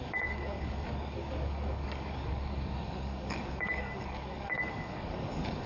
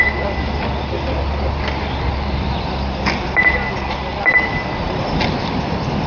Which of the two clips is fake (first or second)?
first